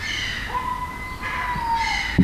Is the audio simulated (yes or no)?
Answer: no